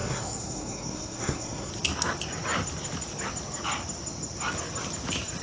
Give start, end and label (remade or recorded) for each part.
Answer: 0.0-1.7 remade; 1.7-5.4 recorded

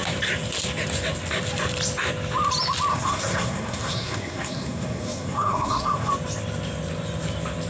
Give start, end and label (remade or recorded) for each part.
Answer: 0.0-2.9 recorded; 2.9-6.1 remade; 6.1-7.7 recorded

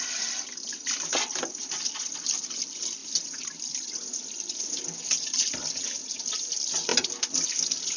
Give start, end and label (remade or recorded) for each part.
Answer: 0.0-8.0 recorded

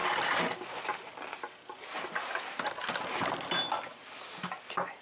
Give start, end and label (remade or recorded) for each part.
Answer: 0.0-5.0 recorded

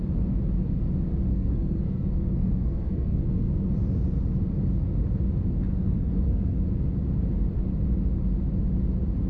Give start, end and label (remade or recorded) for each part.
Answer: 0.0-1.3 recorded; 1.3-3.7 remade; 3.7-5.7 recorded; 5.7-6.6 remade; 6.6-9.3 recorded

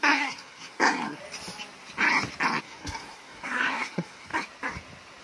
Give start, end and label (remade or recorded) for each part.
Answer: 0.0-1.2 remade; 1.2-2.6 recorded; 2.6-4.3 remade; 4.3-5.2 recorded